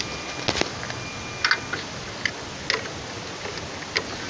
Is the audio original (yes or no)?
yes